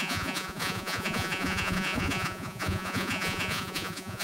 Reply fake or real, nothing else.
fake